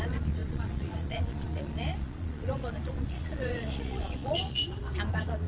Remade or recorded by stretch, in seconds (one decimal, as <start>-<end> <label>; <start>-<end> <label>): 0.0-4.6 remade; 4.6-5.1 recorded; 5.1-5.5 remade